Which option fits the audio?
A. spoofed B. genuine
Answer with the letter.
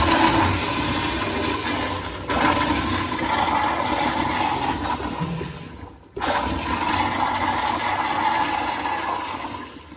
B